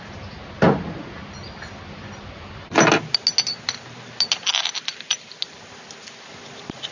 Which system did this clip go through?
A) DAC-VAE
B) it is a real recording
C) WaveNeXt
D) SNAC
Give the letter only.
B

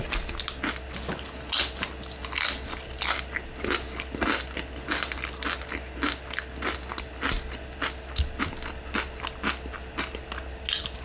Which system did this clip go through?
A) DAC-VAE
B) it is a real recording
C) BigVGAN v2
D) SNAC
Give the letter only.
B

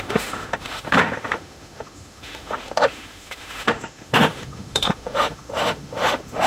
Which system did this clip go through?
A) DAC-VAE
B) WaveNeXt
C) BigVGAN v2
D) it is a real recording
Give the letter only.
A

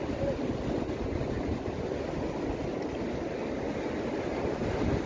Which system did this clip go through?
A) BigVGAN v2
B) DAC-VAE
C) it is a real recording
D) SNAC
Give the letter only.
C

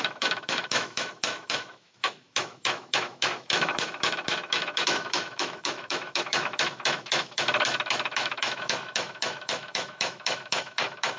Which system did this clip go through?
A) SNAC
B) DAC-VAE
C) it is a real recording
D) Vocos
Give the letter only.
B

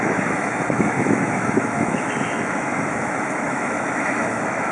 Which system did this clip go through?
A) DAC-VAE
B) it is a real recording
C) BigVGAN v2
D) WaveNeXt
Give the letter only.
A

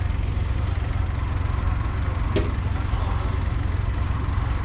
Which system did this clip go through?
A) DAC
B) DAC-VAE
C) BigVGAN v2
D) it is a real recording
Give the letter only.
D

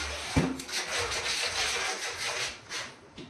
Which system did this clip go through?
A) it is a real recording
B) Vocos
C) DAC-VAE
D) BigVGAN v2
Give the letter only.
A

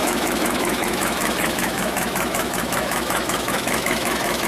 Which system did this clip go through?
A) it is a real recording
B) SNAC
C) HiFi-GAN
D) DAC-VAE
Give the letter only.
D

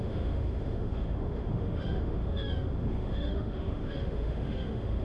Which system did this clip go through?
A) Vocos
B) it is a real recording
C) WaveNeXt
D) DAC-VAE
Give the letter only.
D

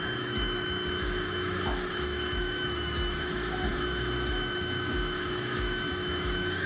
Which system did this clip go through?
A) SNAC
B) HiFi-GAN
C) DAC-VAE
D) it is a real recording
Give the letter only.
C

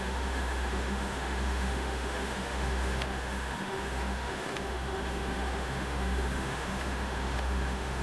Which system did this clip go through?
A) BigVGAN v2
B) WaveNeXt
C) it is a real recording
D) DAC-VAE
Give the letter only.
D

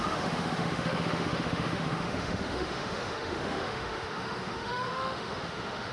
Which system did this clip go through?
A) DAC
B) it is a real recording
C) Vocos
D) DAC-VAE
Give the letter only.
D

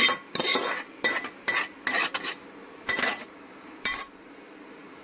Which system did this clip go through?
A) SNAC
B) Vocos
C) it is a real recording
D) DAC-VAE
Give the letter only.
C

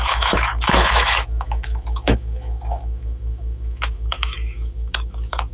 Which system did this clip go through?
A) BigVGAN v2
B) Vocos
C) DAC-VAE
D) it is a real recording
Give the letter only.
C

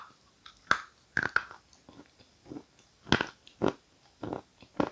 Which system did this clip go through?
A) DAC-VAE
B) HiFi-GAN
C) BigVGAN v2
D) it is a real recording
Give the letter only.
D